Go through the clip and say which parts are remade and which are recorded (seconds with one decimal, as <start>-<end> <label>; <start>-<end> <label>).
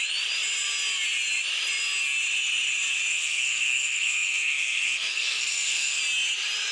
0.0-3.1 recorded; 3.1-6.0 remade; 6.0-6.7 recorded